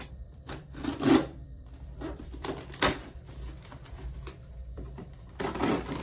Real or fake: fake